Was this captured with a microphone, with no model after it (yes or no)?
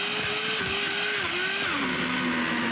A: yes